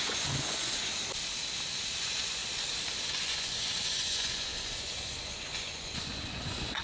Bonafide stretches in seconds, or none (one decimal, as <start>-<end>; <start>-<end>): 0.9-2.0; 2.4-3.0